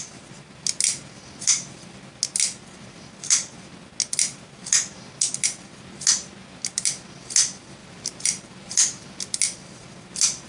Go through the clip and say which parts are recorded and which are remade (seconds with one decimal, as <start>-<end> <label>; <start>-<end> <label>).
0.0-7.8 recorded; 7.8-9.2 remade; 9.2-10.5 recorded